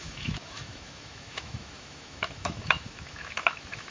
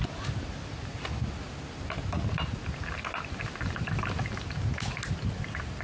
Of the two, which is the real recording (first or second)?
second